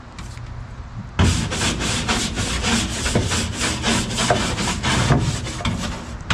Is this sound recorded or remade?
recorded